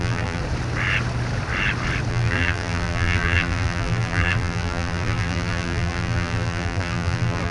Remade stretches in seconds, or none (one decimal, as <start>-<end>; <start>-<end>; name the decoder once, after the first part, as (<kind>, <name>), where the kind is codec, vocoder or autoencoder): 0.0-0.4 (vocoder, BigVGAN v2); 2.1-7.5